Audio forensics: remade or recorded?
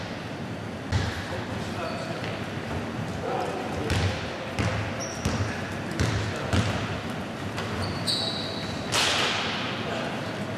recorded